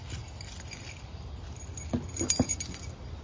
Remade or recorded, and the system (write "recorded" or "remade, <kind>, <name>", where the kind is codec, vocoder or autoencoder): recorded